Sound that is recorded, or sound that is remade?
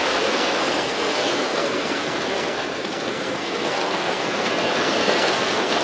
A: remade